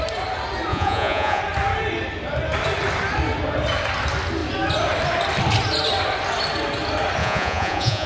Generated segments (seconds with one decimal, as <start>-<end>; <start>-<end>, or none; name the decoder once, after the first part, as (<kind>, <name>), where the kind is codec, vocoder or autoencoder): 0.7-1.4 (vocoder, Vocos); 7.2-8.1